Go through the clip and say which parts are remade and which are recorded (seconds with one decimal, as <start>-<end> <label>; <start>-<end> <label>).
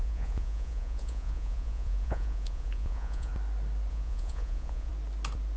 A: 0.0-3.3 remade; 3.3-3.9 recorded; 3.9-4.9 remade; 4.9-5.6 recorded